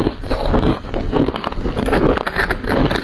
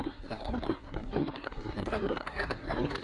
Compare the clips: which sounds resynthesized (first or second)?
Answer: second